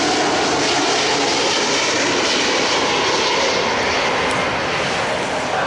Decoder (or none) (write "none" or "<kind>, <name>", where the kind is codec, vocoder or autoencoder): none